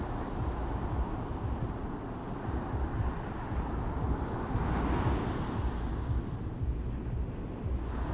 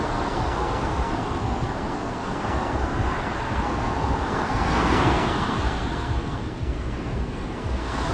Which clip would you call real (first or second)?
first